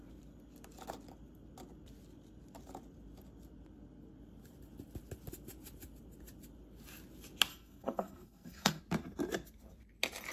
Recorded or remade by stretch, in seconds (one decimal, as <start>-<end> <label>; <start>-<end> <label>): 0.0-7.5 recorded; 7.5-8.8 remade; 8.8-10.3 recorded